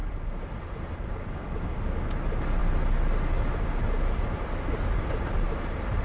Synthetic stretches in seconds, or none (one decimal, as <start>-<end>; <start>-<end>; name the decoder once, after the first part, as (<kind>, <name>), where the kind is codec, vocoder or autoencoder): none